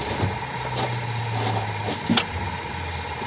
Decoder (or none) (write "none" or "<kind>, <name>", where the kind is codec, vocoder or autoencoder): none